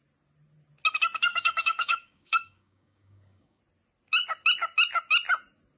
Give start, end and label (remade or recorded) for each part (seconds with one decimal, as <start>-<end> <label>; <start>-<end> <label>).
0.0-1.3 recorded; 1.3-3.6 remade; 3.6-5.8 recorded